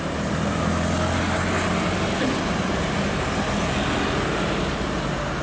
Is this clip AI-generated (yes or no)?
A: no